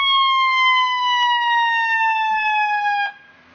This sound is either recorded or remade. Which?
recorded